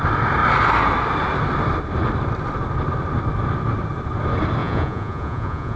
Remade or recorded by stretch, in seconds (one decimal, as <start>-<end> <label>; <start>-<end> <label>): 0.0-4.6 recorded; 4.6-5.8 remade